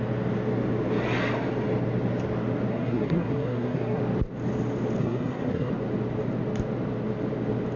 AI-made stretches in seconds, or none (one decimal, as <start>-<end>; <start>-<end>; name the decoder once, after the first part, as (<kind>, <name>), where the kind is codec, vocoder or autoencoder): 2.7-4.0 (codec, SNAC); 5.0-5.7